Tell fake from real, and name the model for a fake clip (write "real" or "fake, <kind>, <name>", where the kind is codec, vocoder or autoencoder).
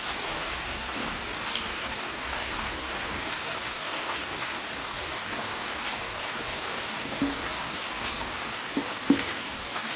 fake, codec, DAC